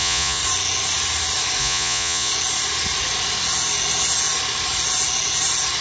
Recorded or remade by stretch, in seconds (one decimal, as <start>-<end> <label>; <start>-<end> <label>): 0.0-0.4 remade; 0.4-1.6 recorded; 1.6-2.3 remade; 2.3-5.8 recorded

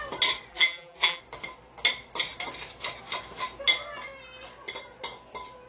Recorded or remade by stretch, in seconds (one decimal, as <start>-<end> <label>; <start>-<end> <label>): 0.0-0.5 recorded; 0.5-1.2 remade; 1.2-5.7 recorded

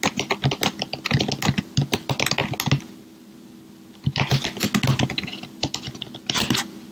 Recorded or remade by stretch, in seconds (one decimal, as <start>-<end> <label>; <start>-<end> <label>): 0.0-6.9 recorded

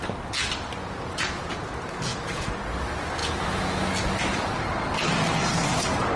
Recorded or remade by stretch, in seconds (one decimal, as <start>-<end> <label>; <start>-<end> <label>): 0.0-0.8 recorded; 0.8-1.7 remade; 1.7-2.1 recorded; 2.1-2.6 remade; 2.6-3.2 recorded; 3.2-3.9 remade; 3.9-6.2 recorded